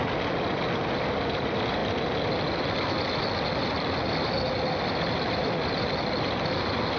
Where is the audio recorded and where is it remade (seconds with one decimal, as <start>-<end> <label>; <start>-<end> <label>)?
0.0-7.0 recorded